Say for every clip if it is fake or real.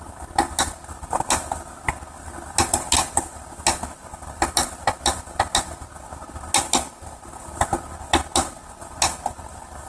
real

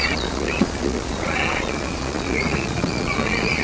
fake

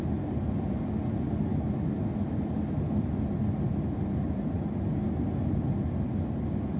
real